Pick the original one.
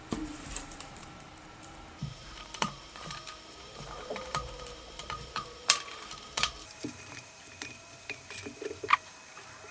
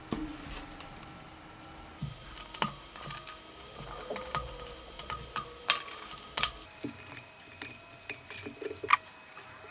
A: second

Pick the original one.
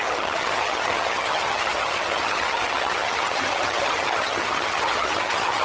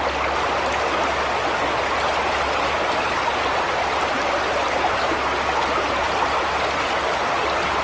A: second